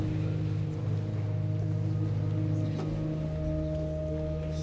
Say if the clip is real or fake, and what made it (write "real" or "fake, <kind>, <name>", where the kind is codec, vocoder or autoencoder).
real